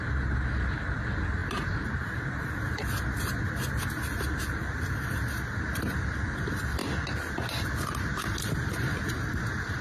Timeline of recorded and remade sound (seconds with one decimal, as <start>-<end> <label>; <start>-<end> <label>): 0.0-9.8 recorded